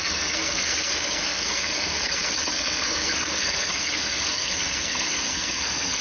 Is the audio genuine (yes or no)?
no